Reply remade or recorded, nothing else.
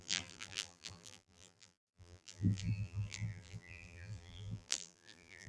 remade